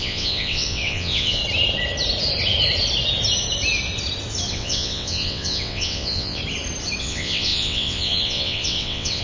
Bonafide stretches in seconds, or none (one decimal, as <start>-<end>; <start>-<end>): 1.4-4.5; 6.4-7.0